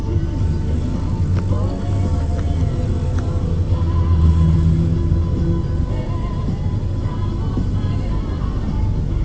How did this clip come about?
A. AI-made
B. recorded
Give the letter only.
B